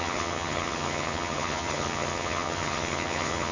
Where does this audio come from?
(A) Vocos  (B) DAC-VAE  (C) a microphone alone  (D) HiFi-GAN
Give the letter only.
D